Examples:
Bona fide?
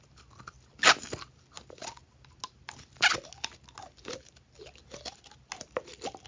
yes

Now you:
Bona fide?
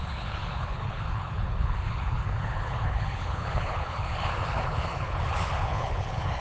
no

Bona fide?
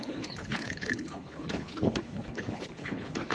no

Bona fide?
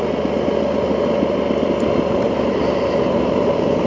yes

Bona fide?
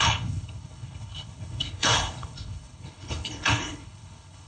no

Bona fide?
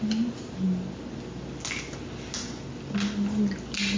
yes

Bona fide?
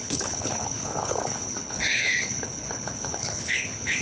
no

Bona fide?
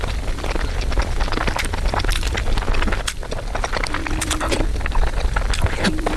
yes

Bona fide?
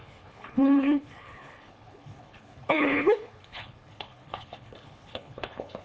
no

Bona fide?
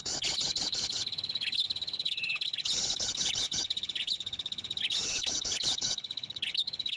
no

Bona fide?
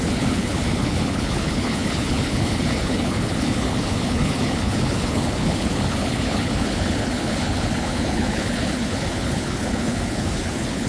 no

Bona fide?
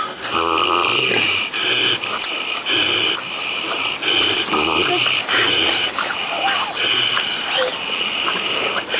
yes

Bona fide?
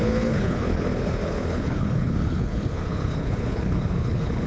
no